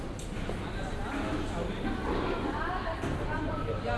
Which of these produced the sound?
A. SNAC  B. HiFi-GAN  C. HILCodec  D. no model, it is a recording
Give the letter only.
D